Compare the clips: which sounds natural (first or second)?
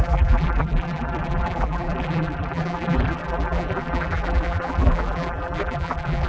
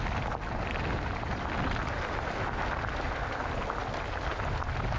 second